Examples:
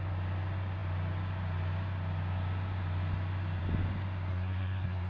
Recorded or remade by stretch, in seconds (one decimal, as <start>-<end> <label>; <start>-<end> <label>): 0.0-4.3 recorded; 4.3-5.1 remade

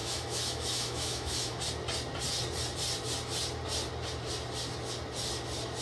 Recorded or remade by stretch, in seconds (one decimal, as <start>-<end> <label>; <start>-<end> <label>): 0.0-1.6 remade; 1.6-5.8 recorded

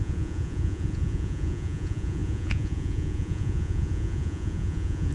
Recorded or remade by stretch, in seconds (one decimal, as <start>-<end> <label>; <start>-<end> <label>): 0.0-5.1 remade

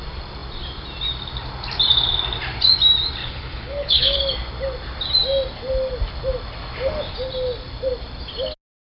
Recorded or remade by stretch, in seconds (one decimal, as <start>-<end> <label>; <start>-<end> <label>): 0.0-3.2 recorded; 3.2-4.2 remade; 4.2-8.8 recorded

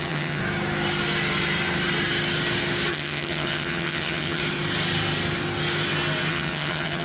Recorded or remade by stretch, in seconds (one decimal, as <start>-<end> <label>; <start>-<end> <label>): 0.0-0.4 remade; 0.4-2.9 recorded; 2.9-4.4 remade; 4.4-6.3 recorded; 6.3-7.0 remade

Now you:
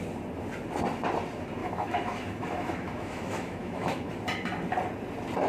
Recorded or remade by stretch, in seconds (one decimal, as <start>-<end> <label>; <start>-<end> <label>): 0.0-1.6 recorded; 1.6-4.1 remade; 4.1-5.5 recorded